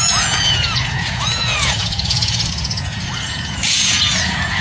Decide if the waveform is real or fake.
fake